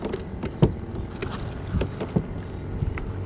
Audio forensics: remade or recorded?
recorded